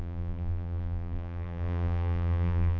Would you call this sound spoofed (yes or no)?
yes